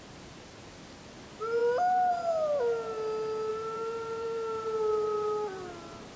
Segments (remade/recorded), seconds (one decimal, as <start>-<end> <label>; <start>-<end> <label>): 0.0-3.5 recorded; 3.5-5.7 remade; 5.7-6.2 recorded

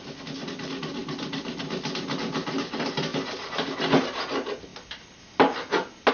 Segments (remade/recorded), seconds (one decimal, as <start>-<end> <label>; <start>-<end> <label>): 0.0-6.1 recorded

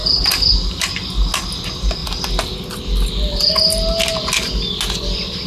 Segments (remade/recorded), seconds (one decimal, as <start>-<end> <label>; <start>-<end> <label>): 0.0-5.5 recorded

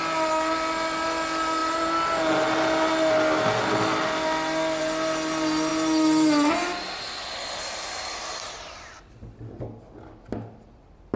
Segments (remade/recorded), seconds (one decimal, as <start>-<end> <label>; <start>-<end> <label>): 0.0-11.2 recorded